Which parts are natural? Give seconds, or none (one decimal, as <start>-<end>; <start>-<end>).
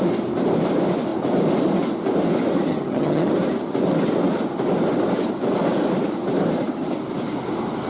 0.0-2.7; 3.3-7.9